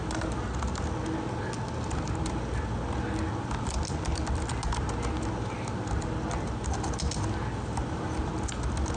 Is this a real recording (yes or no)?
yes